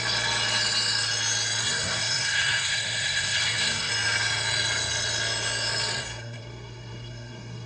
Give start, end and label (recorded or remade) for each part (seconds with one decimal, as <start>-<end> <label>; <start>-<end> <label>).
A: 0.0-1.6 recorded; 1.6-3.9 remade; 3.9-6.0 recorded; 6.0-7.7 remade